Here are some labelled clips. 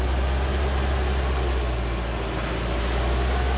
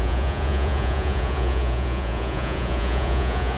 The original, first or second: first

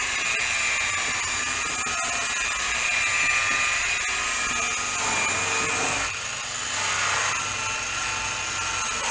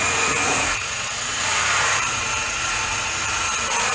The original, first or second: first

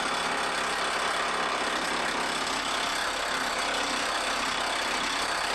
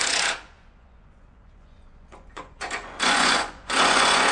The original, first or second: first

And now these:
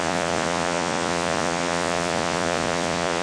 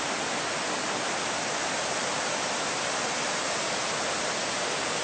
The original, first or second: second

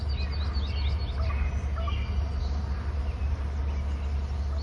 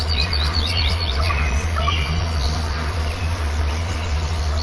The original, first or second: first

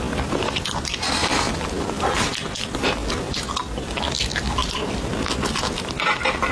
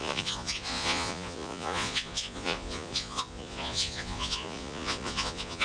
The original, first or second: first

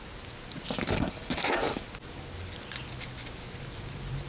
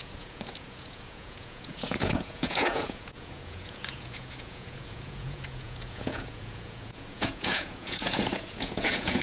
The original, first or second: first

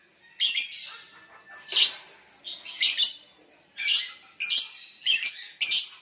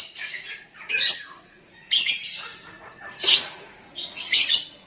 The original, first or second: first